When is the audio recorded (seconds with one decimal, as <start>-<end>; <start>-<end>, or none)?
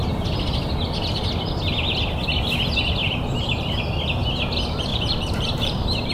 0.0-3.0; 3.8-4.9